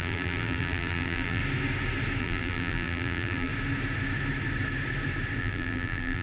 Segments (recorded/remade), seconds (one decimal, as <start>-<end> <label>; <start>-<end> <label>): 0.0-1.4 remade; 1.4-2.2 recorded; 2.2-3.5 remade; 3.5-5.4 recorded; 5.4-6.2 remade